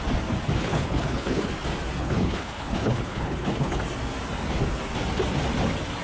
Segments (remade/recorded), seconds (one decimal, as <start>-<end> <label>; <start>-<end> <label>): 0.0-0.6 recorded; 0.6-1.5 remade; 1.5-2.0 recorded; 2.0-3.8 remade; 3.8-6.0 recorded